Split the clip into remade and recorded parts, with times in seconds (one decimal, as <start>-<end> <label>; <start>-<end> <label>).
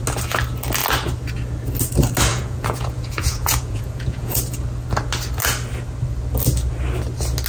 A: 0.0-2.3 recorded; 2.3-4.4 remade; 4.4-7.5 recorded